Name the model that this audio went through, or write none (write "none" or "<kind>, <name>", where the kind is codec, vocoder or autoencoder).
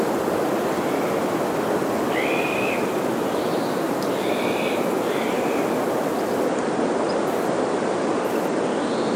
none